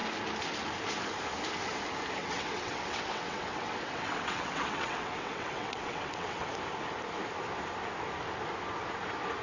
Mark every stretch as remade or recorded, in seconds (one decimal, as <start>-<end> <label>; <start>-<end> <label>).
0.0-2.2 recorded; 2.2-6.5 remade; 6.5-9.4 recorded